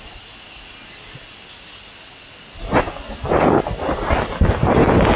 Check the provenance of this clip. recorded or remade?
recorded